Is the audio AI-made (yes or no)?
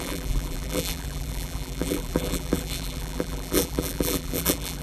yes